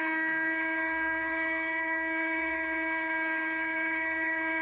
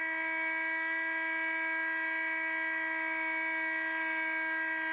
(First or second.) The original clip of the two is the second